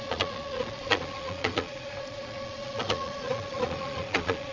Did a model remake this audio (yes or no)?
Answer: yes